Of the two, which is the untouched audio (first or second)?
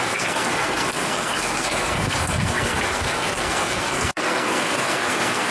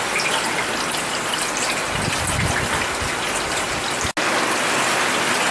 second